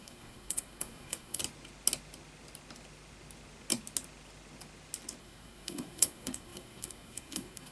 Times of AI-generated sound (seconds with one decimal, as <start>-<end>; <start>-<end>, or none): 0.0-1.4; 5.2-7.7